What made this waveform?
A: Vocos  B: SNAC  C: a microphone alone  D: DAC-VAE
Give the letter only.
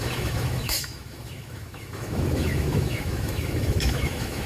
D